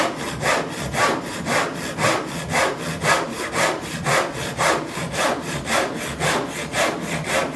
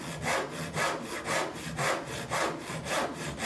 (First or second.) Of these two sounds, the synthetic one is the first